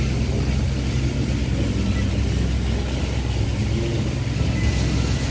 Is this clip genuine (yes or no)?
yes